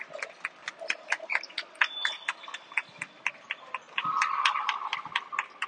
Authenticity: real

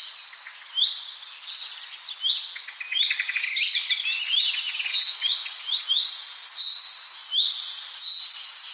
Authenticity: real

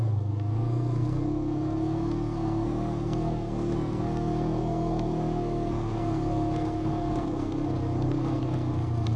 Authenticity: fake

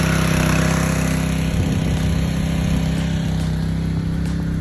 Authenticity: real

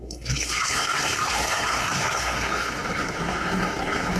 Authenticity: fake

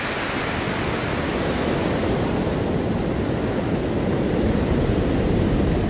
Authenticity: real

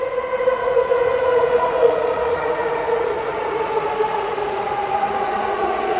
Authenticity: fake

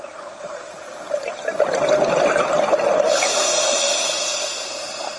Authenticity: real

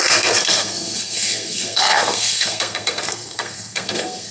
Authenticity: fake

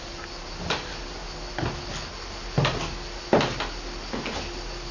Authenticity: real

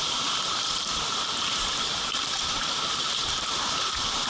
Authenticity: fake